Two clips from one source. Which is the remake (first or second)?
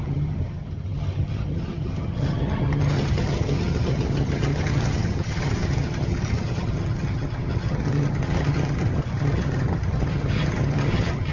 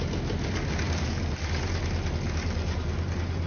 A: first